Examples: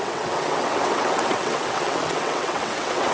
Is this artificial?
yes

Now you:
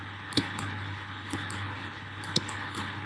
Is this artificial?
yes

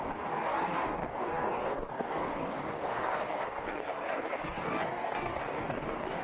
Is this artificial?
yes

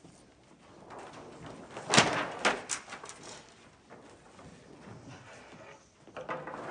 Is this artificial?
no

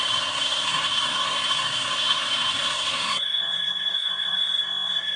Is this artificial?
yes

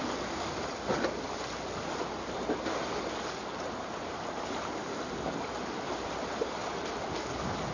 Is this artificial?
no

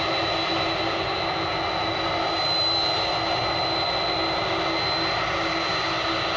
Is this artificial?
no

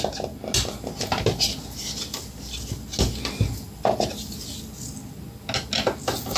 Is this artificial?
no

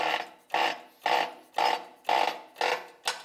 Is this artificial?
no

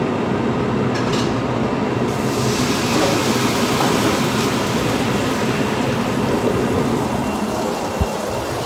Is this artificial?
no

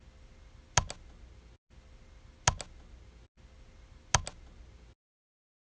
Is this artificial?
no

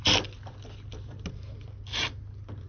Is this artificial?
no